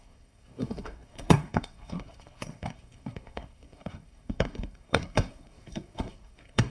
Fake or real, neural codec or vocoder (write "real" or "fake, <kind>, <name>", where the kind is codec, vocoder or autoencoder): fake, codec, SNAC